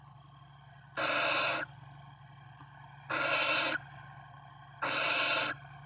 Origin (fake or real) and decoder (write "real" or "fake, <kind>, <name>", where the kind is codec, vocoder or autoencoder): real